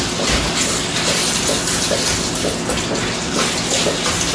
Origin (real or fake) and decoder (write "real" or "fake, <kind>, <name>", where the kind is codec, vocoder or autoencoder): real